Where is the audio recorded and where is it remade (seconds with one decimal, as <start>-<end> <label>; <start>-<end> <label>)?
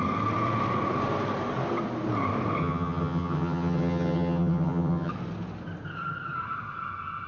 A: 0.0-2.6 recorded; 2.6-5.1 remade; 5.1-7.3 recorded